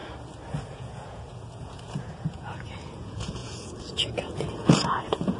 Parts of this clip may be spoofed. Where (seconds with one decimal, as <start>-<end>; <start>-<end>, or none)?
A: 0.5-5.4